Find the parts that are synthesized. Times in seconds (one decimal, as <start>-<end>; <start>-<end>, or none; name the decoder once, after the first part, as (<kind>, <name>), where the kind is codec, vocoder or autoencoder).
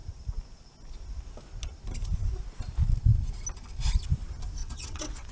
4.6-5.3 (vocoder, WaveNeXt)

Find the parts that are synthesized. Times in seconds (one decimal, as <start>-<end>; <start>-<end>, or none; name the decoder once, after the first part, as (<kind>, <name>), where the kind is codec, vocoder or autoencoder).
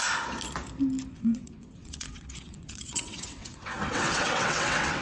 1.1-5.0 (vocoder, WaveNeXt)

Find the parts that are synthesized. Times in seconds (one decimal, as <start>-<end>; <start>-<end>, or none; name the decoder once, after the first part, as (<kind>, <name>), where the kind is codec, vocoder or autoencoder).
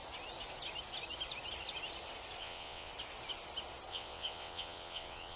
2.4-2.9 (vocoder, WaveNeXt); 3.9-5.4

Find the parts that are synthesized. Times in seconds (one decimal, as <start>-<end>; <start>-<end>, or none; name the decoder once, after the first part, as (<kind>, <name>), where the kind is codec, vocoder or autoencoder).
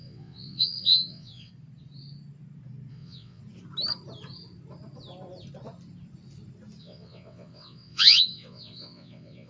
0.0-1.5 (vocoder, WaveNeXt); 2.9-3.4; 6.8-9.5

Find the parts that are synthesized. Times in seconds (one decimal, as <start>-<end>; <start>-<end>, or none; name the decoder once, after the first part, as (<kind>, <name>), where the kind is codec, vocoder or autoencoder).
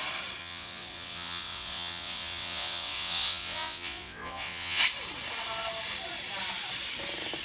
0.4-4.8 (vocoder, WaveNeXt)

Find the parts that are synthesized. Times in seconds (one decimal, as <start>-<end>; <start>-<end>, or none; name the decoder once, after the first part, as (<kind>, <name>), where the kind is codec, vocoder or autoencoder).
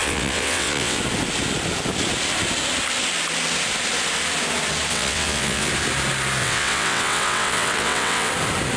0.0-1.0 (vocoder, WaveNeXt); 4.9-5.7; 6.4-8.3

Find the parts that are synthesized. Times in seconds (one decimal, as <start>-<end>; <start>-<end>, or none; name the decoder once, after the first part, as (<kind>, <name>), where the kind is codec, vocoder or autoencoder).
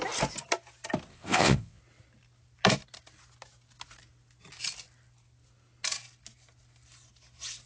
1.1-1.8 (vocoder, WaveNeXt)